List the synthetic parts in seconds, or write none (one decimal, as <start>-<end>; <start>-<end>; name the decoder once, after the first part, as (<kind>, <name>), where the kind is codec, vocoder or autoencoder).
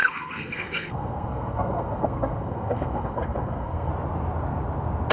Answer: 0.0-3.9 (codec, SNAC)